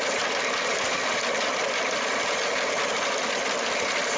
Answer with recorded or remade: remade